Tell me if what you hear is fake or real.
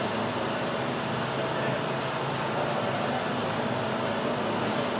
real